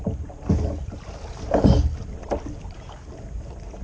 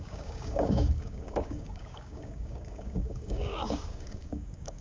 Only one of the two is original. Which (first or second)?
first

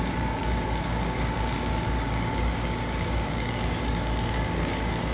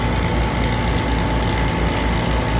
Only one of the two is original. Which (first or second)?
second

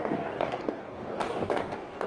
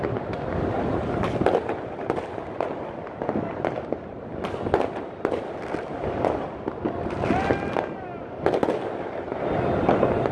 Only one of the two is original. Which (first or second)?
second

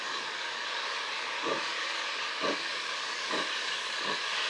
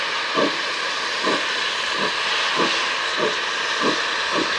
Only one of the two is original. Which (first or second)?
second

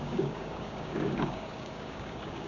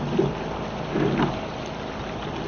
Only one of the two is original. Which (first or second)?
second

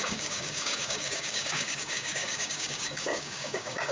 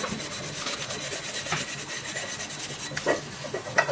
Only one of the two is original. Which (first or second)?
second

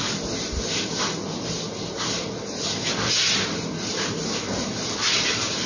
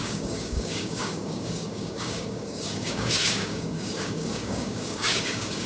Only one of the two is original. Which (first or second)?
first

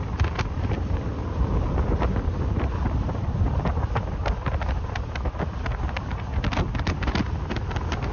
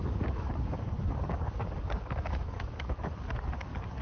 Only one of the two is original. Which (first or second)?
first